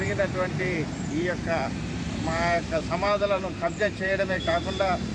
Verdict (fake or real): fake